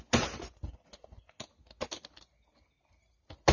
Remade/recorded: recorded